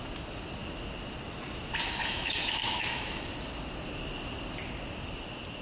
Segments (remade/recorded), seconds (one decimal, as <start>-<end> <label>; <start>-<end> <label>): 0.0-2.0 recorded; 2.0-3.3 remade; 3.3-5.6 recorded